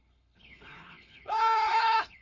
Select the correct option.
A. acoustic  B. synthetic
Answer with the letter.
B